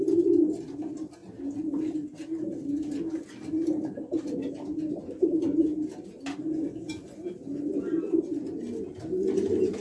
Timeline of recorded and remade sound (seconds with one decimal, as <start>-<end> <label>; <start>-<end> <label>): 0.0-9.8 recorded